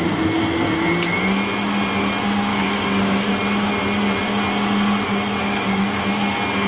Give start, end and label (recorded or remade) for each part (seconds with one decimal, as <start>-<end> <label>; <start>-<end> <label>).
0.0-2.5 recorded; 2.5-3.3 remade; 3.3-5.4 recorded; 5.4-6.0 remade; 6.0-6.7 recorded